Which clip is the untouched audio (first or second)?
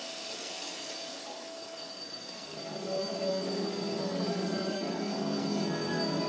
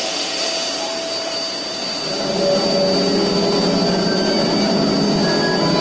second